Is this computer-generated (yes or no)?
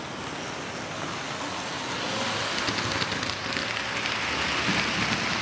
no